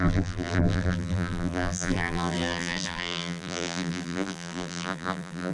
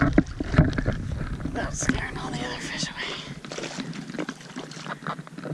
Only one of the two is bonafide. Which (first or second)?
second